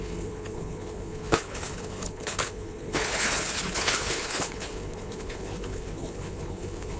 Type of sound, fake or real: fake